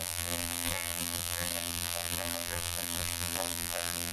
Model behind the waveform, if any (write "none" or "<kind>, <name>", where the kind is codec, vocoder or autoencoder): vocoder, BigVGAN v2